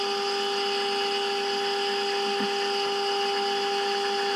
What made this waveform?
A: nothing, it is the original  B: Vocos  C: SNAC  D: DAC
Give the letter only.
A